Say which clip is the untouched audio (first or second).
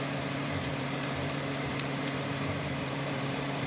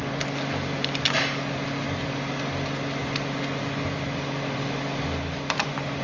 second